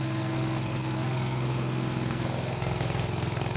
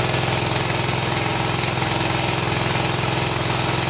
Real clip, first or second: second